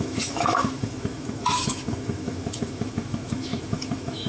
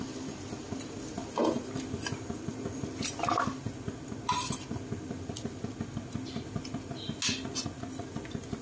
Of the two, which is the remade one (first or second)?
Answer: first